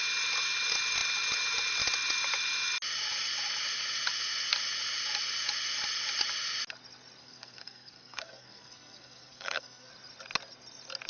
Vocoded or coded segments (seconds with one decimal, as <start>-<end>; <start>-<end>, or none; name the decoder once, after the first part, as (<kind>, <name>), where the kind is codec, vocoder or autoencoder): 7.2-9.9 (codec, SNAC)